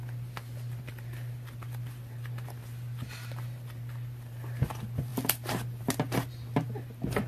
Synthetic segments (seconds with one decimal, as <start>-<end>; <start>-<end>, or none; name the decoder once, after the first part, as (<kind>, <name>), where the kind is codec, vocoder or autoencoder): none